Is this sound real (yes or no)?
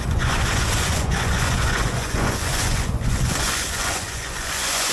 no